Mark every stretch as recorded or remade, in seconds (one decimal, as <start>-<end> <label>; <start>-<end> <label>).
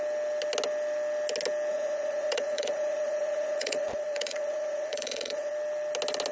0.0-1.7 recorded; 1.7-5.5 remade; 5.5-6.3 recorded